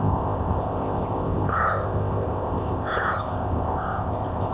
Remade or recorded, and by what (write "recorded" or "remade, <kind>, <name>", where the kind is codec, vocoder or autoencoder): remade, codec, ZipCodec